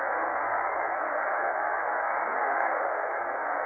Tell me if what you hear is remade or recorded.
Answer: remade